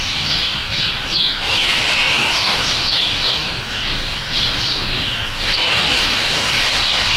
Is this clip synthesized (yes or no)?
yes